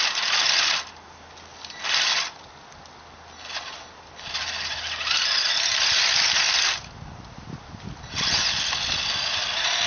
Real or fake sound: real